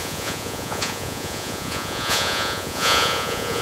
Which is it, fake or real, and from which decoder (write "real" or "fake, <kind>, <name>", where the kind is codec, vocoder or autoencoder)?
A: fake, vocoder, Vocos